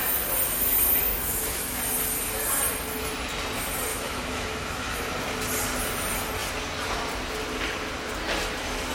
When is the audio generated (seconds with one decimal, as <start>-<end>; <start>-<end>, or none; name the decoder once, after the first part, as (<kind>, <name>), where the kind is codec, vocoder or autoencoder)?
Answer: 1.1-1.8 (autoencoder, DAC-VAE); 3.9-5.1